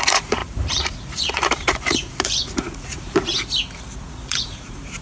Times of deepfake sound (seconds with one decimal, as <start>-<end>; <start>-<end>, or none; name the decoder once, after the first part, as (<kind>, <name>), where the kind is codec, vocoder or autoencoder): 0.0-3.3 (vocoder, Vocos); 4.0-5.0